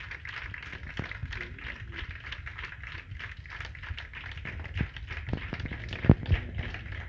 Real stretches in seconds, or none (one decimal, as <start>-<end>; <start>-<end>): 0.0-7.1